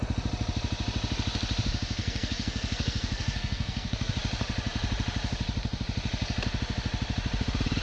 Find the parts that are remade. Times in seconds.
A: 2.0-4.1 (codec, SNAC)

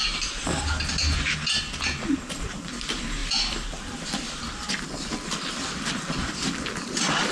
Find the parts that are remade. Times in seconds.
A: 1.6-7.3 (vocoder, BigVGAN v2)

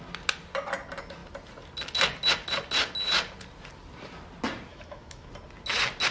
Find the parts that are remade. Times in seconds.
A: 4.7-5.3 (autoencoder, DAC-VAE)